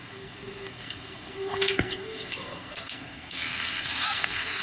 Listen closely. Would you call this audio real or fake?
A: fake